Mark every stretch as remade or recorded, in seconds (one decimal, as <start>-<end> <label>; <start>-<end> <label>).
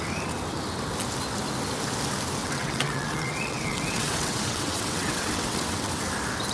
0.0-2.4 recorded; 2.4-5.9 remade; 5.9-6.5 recorded